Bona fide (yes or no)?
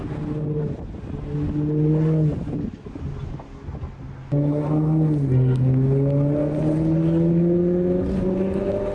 yes